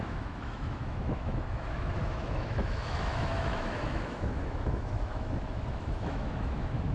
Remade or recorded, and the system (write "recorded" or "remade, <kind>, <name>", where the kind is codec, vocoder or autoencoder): remade, autoencoder, DAC-VAE